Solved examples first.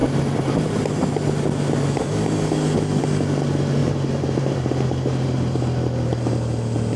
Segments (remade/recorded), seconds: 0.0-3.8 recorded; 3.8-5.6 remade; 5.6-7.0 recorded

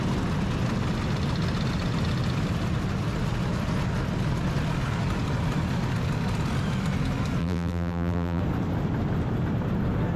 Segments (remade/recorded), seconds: 0.0-7.4 recorded; 7.4-8.4 remade; 8.4-10.2 recorded

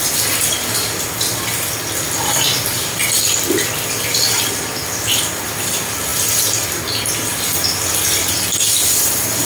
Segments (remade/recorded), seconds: 0.0-4.1 recorded; 4.1-5.4 remade; 5.4-9.5 recorded

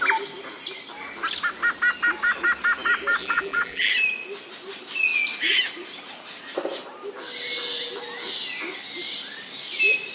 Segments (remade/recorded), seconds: 0.0-3.2 recorded; 3.2-3.9 remade; 3.9-10.1 recorded

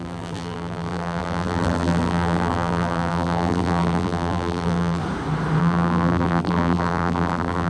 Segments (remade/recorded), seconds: 0.0-5.0 remade; 5.0-5.6 recorded; 5.6-7.7 remade